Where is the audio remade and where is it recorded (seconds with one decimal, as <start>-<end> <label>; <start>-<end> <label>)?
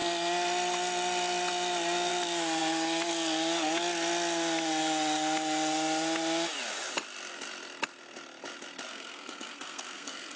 0.0-8.9 recorded; 8.9-10.4 remade